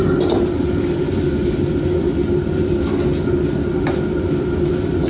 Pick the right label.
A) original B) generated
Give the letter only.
A